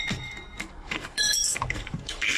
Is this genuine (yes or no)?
no